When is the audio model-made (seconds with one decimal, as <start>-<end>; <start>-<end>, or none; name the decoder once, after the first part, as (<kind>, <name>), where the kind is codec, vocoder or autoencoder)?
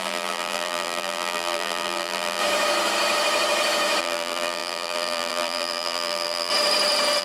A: 0.0-2.4 (vocoder, BigVGAN v2); 4.0-6.5